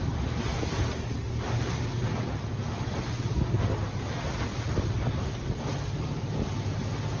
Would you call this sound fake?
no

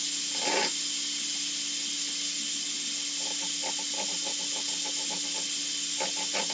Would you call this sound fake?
no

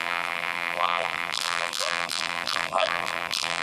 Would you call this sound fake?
yes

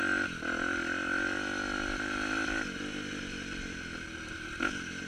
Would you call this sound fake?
no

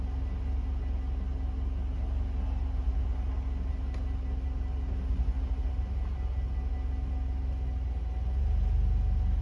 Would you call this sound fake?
no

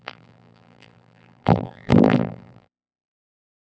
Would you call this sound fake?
yes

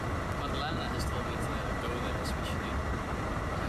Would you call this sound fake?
no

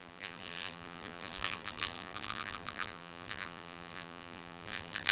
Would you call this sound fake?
yes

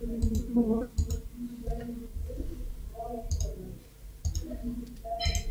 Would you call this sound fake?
no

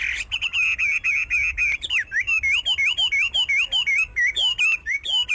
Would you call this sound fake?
no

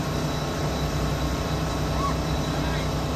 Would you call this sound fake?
yes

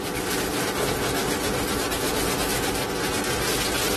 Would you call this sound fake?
no